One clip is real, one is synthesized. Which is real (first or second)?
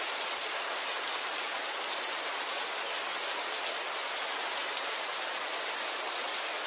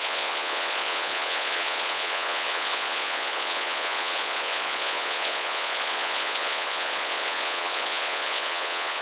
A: first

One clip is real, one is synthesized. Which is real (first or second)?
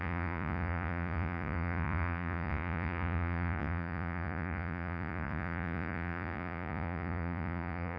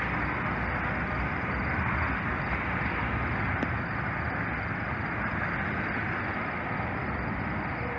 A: second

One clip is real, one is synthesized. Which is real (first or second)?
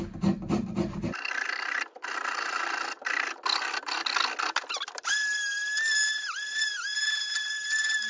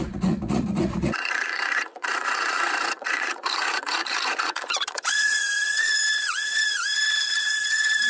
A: first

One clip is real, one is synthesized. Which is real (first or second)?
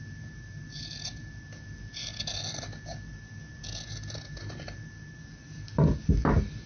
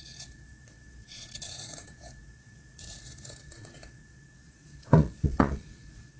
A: first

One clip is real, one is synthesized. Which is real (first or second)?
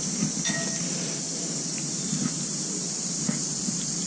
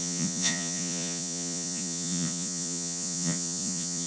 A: first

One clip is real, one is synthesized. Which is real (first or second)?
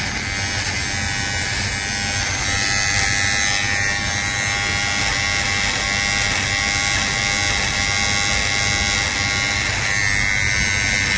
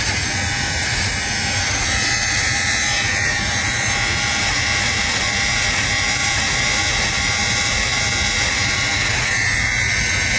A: first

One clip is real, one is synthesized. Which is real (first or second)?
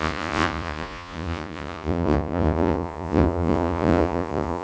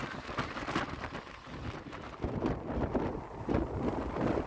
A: second